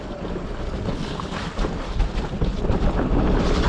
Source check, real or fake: real